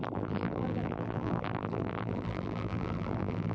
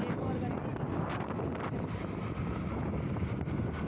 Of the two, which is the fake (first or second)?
first